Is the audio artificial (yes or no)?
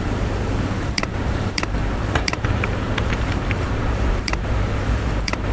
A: yes